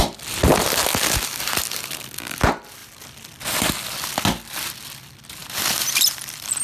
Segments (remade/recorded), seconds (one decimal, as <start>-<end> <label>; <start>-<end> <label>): 0.0-2.8 recorded; 2.8-3.6 remade; 3.6-5.4 recorded; 5.4-6.6 remade